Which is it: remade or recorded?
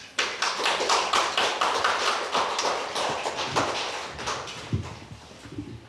recorded